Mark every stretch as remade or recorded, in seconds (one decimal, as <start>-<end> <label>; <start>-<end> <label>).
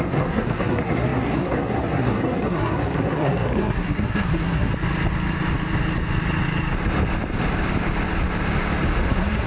0.0-4.7 remade; 4.7-9.1 recorded; 9.1-9.5 remade